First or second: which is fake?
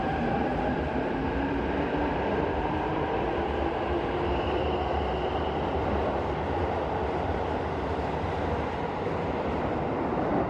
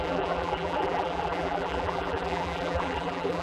second